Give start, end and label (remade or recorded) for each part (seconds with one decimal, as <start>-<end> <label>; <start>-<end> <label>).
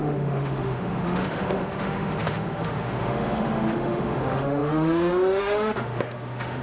0.0-6.6 remade